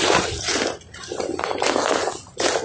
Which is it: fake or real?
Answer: real